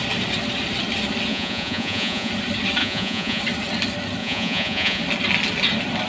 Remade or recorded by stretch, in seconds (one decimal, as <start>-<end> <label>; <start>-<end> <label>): 0.0-1.3 recorded; 1.3-2.3 remade; 2.3-2.8 recorded; 2.8-3.4 remade; 3.4-4.2 recorded; 4.2-5.0 remade; 5.0-6.1 recorded